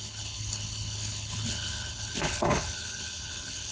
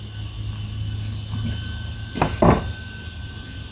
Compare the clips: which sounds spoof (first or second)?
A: first